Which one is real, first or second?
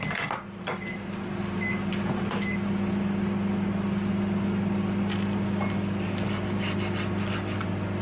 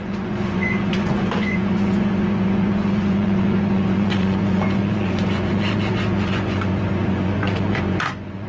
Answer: first